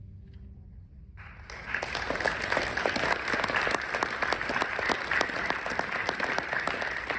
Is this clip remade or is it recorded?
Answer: recorded